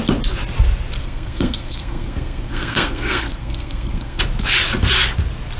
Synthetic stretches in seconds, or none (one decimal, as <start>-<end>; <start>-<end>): 1.0-4.2